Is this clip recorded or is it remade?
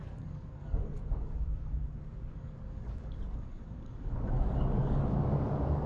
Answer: remade